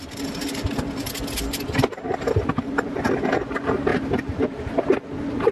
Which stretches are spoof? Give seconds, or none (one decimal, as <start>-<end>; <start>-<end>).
3.9-4.8